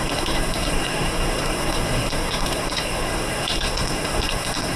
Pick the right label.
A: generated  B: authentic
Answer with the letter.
A